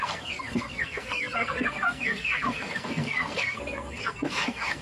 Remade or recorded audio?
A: remade